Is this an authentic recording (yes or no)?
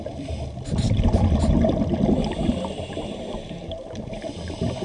yes